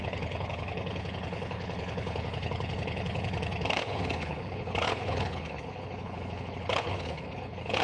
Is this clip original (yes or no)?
no